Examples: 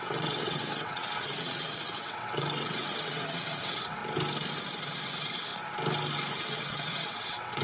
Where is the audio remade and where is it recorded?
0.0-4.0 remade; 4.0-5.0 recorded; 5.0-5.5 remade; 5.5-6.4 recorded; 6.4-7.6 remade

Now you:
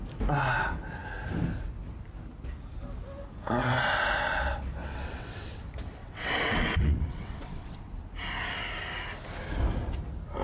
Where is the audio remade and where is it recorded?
0.0-4.8 recorded; 4.8-5.6 remade; 5.6-6.0 recorded; 6.0-7.8 remade; 7.8-10.4 recorded

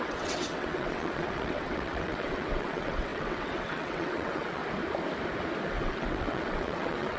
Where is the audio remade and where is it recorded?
0.0-4.6 remade; 4.6-5.7 recorded; 5.7-7.2 remade

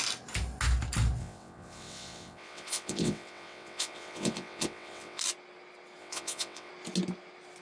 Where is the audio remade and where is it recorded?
0.0-1.2 recorded; 1.2-5.2 remade; 5.2-6.0 recorded; 6.0-6.7 remade; 6.7-7.6 recorded